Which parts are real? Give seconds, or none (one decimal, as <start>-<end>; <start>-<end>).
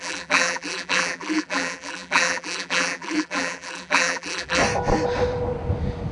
4.6-6.1